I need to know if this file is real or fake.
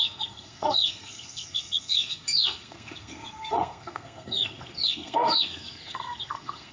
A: fake